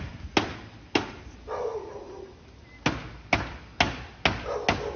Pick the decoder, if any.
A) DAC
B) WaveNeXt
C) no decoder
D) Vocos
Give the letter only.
C